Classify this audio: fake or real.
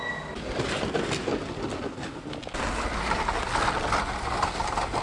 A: real